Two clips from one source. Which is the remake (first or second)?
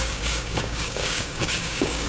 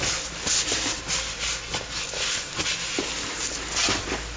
first